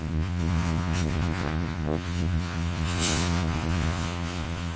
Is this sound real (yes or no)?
no